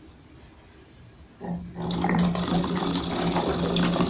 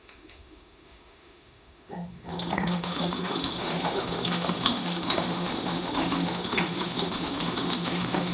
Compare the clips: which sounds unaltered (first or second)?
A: first